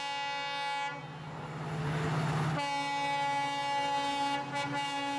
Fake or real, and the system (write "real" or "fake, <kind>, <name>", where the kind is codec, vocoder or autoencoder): real